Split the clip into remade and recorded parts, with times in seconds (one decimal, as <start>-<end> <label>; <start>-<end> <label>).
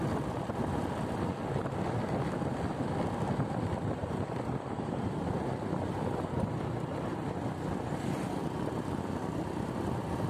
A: 0.0-4.0 recorded; 4.0-5.3 remade; 5.3-10.3 recorded